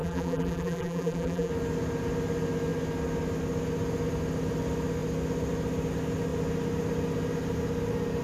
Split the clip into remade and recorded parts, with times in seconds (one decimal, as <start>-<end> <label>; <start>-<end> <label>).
0.0-1.5 remade; 1.5-8.2 recorded